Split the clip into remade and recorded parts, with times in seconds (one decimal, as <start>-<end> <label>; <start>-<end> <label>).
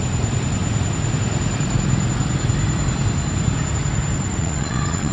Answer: 0.0-4.4 recorded; 4.4-5.1 remade